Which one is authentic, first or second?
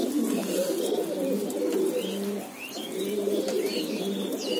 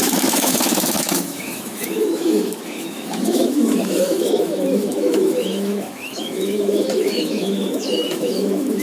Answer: first